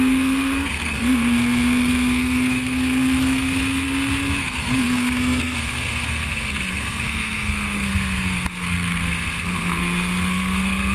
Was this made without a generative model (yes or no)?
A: no